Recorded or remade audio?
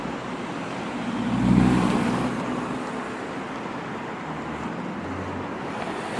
recorded